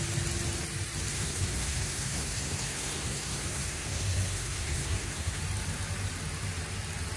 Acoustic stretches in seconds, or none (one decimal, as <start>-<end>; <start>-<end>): 0.0-1.1; 5.4-7.2